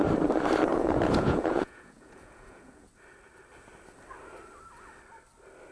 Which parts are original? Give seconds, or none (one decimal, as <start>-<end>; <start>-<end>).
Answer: 0.0-0.7; 2.9-5.7